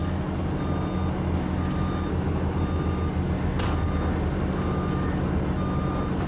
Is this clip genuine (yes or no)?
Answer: yes